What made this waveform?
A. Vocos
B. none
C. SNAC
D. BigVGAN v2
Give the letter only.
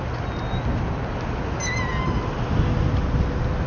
B